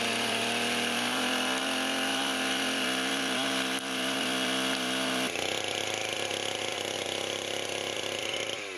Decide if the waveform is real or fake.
fake